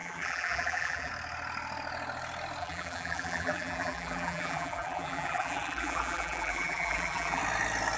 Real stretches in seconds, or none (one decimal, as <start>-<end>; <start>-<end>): 1.1-2.6; 7.4-8.0